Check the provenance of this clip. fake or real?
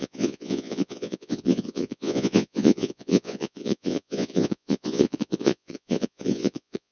fake